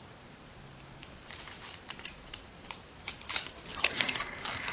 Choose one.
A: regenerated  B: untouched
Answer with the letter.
A